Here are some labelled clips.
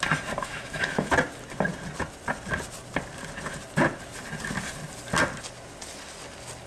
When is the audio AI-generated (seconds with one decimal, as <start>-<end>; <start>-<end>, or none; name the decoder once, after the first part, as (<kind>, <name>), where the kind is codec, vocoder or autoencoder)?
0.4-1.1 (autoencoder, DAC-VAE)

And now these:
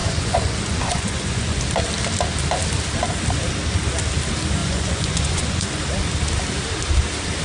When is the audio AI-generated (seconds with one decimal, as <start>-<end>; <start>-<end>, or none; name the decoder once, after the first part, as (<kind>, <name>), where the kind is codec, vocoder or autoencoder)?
0.0-1.6 (vocoder, Vocos); 4.6-5.8

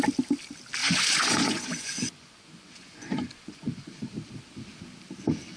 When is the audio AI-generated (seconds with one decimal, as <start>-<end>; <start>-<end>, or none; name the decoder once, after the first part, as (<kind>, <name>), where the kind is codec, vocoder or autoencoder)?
0.8-4.0 (vocoder, Vocos)

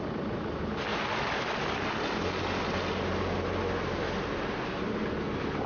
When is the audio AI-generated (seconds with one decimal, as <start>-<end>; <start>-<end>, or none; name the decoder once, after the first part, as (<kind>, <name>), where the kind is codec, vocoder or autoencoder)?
none

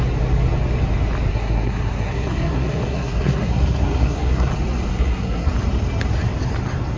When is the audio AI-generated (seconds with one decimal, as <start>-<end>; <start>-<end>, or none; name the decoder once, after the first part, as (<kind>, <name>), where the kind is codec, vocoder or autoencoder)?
1.3-4.5 (codec, SNAC); 4.9-5.5

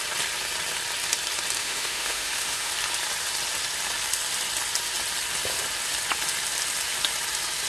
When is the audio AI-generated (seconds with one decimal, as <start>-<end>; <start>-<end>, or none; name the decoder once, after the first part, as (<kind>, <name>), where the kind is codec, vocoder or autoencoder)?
1.6-2.7 (autoencoder, DAC-VAE)